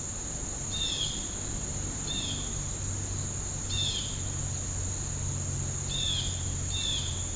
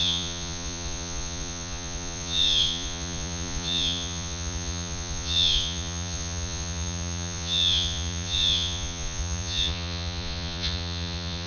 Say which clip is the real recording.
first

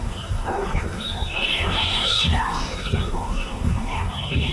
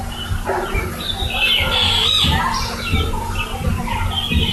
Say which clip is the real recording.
second